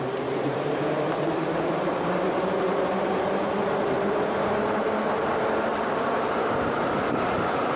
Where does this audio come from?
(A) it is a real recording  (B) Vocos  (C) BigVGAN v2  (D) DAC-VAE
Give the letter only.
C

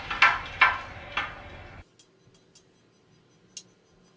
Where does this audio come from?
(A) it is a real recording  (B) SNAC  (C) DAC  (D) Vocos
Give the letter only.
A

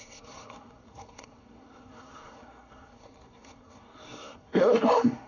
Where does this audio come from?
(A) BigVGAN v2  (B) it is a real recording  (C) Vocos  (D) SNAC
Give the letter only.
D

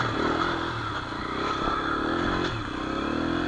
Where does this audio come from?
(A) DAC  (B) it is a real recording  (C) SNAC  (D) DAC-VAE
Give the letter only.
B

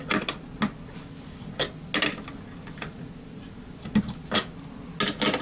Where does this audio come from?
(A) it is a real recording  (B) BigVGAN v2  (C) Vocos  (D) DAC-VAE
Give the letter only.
A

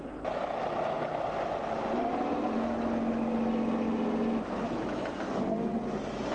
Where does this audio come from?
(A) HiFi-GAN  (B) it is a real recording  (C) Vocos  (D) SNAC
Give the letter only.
B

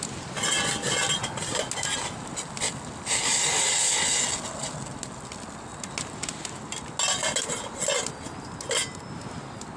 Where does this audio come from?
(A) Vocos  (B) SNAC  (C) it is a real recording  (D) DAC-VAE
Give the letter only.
C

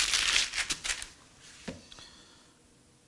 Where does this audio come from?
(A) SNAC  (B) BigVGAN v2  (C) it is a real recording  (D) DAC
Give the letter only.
C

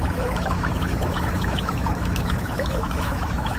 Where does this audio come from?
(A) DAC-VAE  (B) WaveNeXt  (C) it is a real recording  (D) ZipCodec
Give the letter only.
A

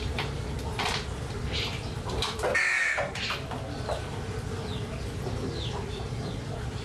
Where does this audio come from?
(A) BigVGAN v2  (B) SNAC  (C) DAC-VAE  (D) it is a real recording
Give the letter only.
D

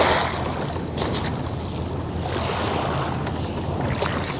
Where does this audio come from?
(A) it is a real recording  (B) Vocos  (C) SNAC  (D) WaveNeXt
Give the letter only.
A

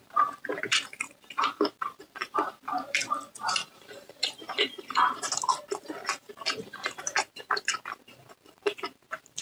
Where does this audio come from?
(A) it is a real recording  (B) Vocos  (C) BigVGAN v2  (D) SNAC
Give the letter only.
C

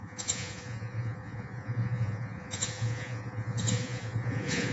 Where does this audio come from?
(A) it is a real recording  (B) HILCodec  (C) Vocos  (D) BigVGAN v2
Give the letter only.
C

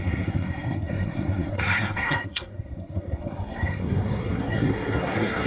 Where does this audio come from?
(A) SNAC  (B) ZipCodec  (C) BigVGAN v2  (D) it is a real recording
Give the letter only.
A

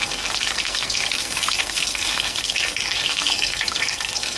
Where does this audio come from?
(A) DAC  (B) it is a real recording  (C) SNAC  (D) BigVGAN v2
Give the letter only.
C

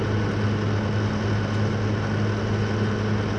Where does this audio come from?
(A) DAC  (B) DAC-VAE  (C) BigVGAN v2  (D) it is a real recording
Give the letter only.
D